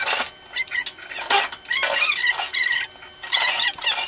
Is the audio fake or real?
real